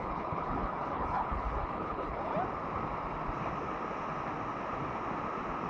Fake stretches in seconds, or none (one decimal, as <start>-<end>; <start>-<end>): 0.0-2.3